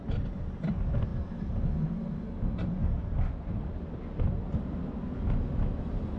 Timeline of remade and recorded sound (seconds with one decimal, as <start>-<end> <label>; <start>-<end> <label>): 0.0-6.2 recorded